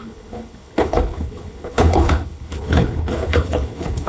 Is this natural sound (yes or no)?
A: no